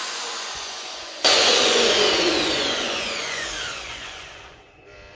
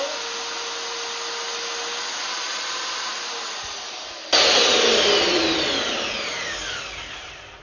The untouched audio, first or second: second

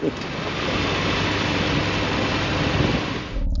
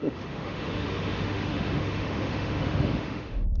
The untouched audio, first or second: first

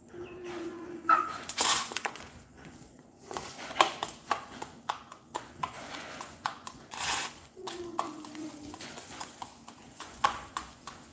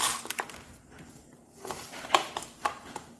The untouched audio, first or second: second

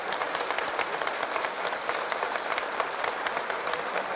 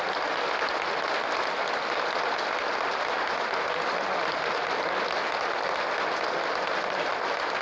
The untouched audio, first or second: second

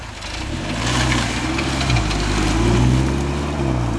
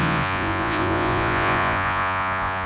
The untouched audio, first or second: first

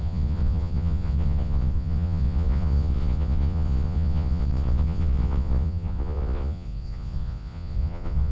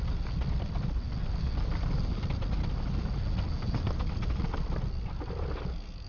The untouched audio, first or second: second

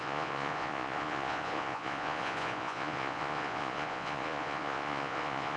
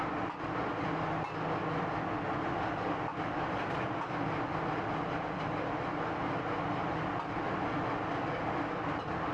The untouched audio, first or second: second